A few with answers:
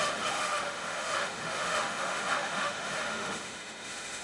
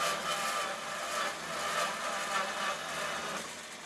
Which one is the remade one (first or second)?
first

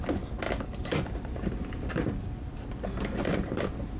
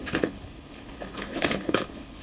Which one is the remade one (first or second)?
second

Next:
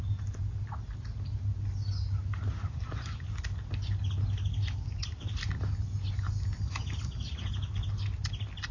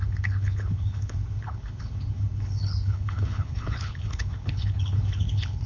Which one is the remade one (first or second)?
second